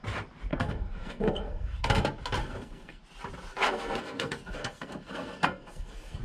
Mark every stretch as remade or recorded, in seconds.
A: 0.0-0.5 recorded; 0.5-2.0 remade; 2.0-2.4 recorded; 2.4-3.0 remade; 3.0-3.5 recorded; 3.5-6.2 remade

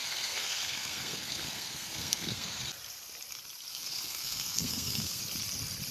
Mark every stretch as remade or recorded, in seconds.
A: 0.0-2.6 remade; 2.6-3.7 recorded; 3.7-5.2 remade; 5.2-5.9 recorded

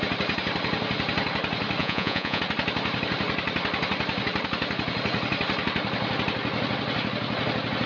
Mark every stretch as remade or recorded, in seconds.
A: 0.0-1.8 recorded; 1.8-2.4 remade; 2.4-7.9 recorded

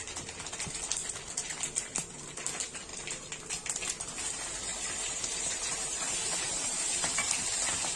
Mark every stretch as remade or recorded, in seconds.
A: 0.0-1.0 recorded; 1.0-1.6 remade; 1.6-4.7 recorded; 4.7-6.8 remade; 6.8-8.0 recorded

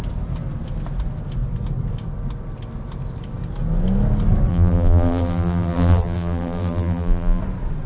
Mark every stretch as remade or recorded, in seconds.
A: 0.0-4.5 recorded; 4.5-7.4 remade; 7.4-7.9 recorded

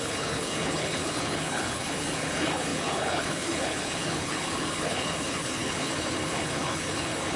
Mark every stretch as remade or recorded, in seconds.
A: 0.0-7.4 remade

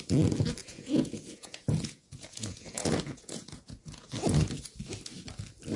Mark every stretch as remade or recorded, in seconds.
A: 0.0-0.6 recorded; 0.6-4.1 remade; 4.1-5.8 recorded

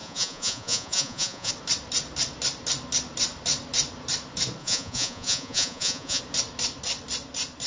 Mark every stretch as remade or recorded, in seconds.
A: 0.0-1.5 remade; 1.5-4.6 recorded; 4.6-6.2 remade; 6.2-7.7 recorded